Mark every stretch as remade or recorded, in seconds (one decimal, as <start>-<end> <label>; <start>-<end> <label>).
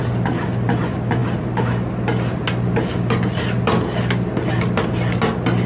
0.0-5.7 recorded